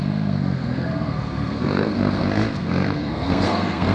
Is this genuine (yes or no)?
no